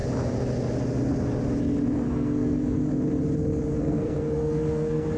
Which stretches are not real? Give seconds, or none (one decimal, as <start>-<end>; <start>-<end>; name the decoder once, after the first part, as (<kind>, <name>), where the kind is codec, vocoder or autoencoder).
2.0-2.8 (codec, SNAC); 3.7-5.2